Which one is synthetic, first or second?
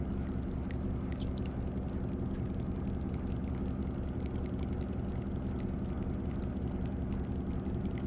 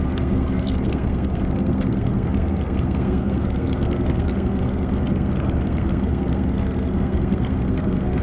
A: second